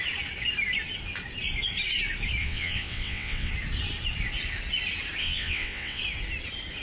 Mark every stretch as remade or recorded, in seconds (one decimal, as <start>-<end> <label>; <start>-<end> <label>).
0.0-2.4 recorded; 2.4-3.5 remade; 3.5-5.2 recorded; 5.2-6.0 remade; 6.0-6.8 recorded